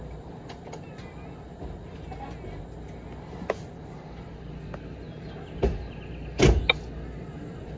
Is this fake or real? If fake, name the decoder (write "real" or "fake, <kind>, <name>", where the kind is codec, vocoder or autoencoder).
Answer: real